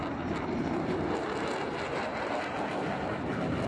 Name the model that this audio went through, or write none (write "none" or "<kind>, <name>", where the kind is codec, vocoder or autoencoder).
none